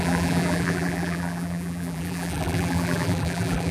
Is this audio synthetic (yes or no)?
yes